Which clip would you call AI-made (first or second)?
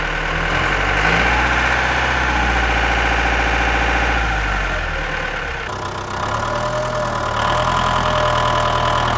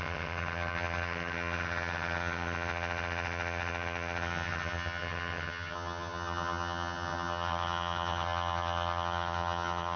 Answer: second